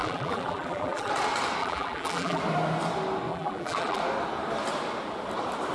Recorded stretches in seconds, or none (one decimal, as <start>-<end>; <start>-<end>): 1.1-1.6; 2.4-3.3; 4.0-5.7